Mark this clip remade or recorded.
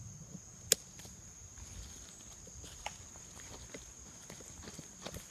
recorded